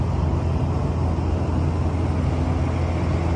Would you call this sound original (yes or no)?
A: yes